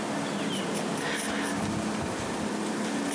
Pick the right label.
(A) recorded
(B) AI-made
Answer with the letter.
A